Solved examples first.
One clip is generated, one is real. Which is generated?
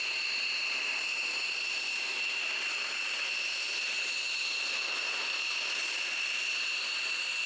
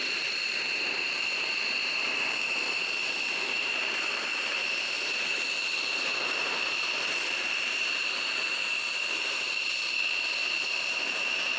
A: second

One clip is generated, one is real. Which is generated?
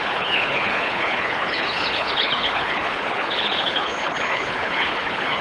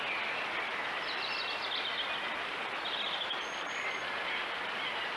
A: first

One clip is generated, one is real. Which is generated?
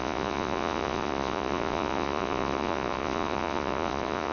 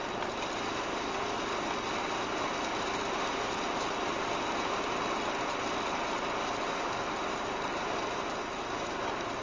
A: first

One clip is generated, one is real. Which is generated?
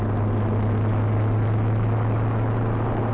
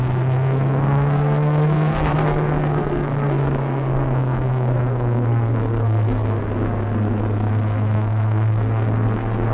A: second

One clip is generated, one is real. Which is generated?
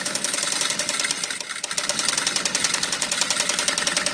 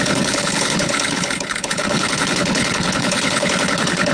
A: second